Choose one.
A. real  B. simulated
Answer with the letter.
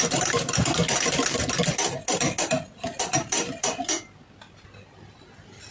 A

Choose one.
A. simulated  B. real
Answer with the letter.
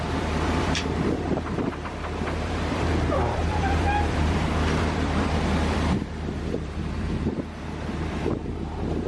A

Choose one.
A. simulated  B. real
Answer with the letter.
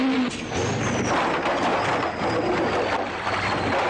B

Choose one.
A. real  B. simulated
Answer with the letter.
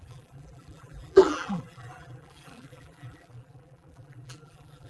B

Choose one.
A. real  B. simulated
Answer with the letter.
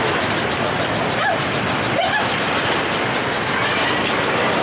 A